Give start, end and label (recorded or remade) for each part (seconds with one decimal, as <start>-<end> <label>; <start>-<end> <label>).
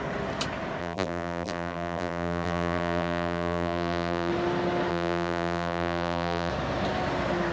0.0-0.8 recorded; 0.8-4.3 remade; 4.3-4.9 recorded; 4.9-6.5 remade; 6.5-7.5 recorded